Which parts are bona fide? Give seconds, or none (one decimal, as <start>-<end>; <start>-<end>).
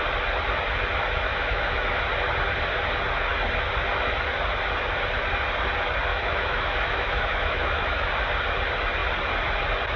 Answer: 0.0-1.3; 2.0-6.1; 8.1-10.0